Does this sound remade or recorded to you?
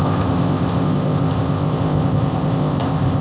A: remade